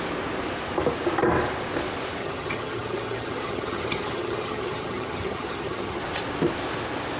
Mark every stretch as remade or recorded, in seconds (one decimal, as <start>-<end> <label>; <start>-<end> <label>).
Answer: 0.0-2.2 recorded; 2.2-6.0 remade; 6.0-7.2 recorded